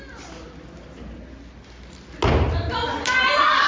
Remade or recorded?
recorded